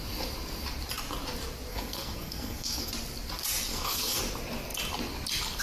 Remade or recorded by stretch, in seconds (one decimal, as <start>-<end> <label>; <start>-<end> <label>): 0.0-1.7 recorded; 1.7-2.9 remade; 2.9-3.7 recorded; 3.7-4.2 remade; 4.2-5.6 recorded